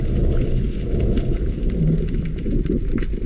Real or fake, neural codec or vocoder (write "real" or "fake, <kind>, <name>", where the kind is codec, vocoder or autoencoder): real